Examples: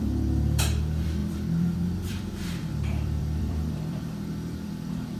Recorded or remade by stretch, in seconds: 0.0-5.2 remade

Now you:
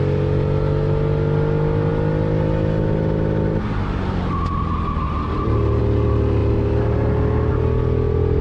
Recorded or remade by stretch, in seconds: 0.0-8.4 recorded

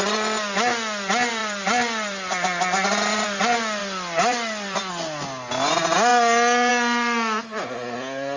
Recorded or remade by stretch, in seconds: 0.0-1.4 recorded; 1.4-3.4 remade; 3.4-3.8 recorded; 3.8-4.9 remade; 4.9-8.4 recorded

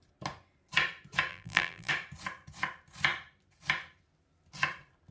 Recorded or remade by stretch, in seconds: 0.0-1.3 recorded; 1.3-1.9 remade; 1.9-5.1 recorded

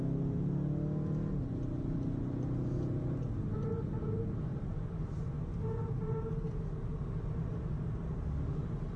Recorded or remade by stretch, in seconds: 0.0-4.5 recorded; 4.5-5.6 remade; 5.6-9.0 recorded

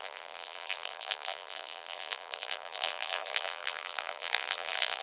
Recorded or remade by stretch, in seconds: 0.0-5.0 remade

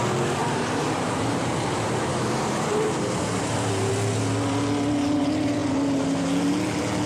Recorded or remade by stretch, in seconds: 0.0-0.4 recorded; 0.4-3.9 remade; 3.9-7.1 recorded